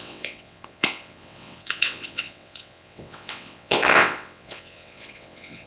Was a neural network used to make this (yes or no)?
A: yes